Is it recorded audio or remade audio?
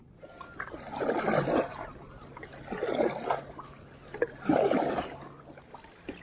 recorded